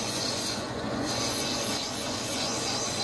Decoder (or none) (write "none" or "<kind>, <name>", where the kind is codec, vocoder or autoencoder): vocoder, Vocos